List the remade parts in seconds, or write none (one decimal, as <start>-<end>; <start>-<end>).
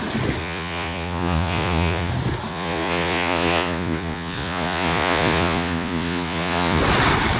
0.4-2.1; 2.5-6.8